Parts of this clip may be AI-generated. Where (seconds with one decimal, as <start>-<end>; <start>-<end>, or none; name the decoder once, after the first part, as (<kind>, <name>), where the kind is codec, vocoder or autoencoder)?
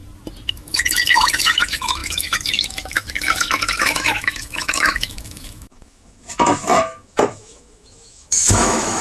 0.5-9.0 (autoencoder, DAC-VAE)